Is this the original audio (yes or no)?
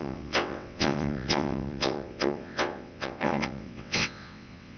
no